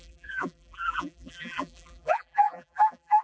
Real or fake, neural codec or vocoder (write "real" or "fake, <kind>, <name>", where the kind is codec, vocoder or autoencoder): fake, vocoder, BigVGAN v2